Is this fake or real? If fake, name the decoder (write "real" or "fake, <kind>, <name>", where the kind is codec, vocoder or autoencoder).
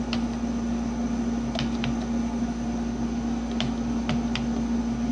real